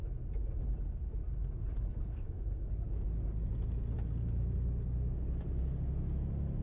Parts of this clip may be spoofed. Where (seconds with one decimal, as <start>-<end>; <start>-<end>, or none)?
2.1-2.7